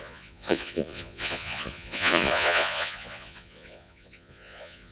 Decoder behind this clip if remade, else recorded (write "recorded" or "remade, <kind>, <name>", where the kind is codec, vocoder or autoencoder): remade, vocoder, Vocos